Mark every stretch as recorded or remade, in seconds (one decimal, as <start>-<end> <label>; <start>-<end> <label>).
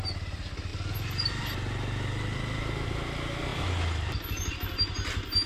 0.0-5.5 recorded